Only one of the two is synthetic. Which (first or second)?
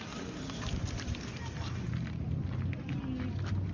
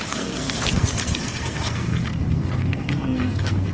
second